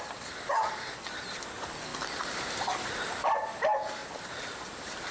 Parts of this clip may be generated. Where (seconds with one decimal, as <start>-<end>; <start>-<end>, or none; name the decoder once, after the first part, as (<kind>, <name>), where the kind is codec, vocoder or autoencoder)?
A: 1.9-3.2 (vocoder, BigVGAN v2); 4.0-5.1